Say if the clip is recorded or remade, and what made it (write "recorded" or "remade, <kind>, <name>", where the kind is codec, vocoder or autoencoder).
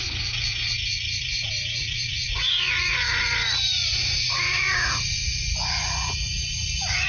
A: remade, vocoder, Vocos